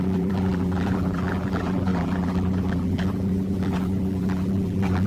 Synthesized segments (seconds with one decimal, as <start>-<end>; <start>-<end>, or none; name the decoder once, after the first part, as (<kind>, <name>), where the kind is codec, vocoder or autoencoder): 0.0-5.1 (vocoder, BigVGAN v2)